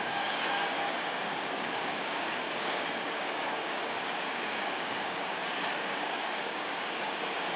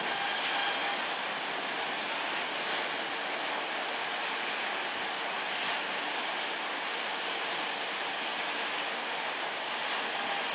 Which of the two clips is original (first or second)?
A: second